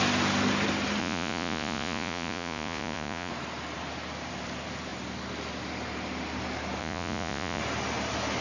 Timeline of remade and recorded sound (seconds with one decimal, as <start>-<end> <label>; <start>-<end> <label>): 0.0-1.0 recorded; 1.0-3.3 remade; 3.3-6.8 recorded; 6.8-7.6 remade; 7.6-8.4 recorded